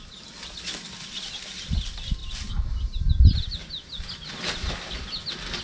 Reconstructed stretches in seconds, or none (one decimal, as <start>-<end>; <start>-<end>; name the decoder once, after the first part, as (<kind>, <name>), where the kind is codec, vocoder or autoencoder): none